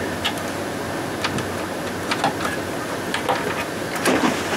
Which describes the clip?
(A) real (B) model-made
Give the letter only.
A